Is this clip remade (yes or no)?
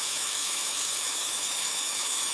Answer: yes